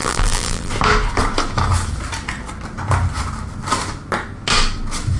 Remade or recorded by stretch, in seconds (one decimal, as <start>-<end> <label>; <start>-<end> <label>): 0.0-0.7 remade; 0.7-5.2 recorded